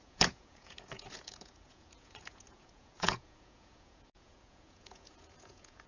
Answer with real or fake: fake